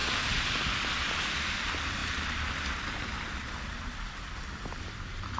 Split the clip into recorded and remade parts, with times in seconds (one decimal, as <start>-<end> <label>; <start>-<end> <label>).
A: 0.0-5.4 remade